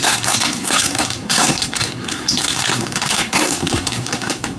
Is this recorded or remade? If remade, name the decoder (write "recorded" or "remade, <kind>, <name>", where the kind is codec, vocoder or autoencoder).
remade, codec, SNAC